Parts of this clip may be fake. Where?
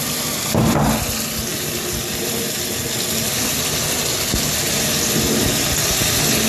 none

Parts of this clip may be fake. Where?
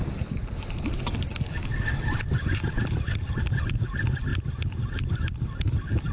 none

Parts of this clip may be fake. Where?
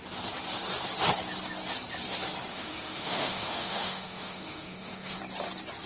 2.5-5.2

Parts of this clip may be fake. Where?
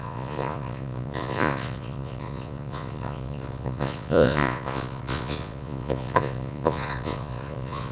0.0-7.9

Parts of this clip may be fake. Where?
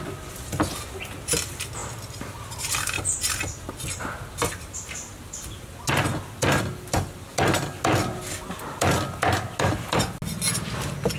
none